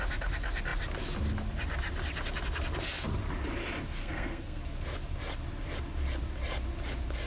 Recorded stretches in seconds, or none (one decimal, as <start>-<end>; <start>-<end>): 0.0-4.0; 4.6-7.3